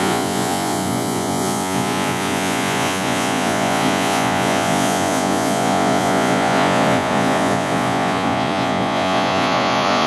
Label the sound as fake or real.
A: fake